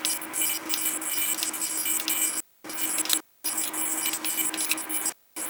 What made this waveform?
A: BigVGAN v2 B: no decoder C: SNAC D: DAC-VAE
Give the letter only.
B